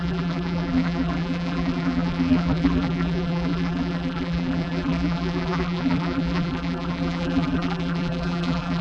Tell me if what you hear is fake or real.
fake